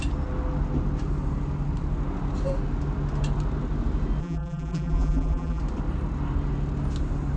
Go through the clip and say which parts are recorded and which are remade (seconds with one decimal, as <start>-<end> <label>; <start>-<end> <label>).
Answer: 0.0-4.2 recorded; 4.2-5.6 remade; 5.6-7.4 recorded